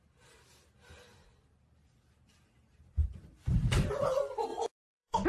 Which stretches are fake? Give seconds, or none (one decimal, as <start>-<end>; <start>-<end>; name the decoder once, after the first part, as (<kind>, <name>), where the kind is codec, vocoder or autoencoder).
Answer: 0.0-5.3 (vocoder, BigVGAN v2)